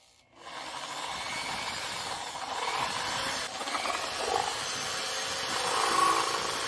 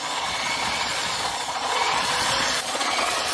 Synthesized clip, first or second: second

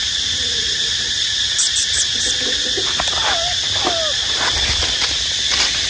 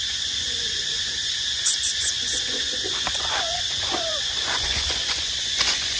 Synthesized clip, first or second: second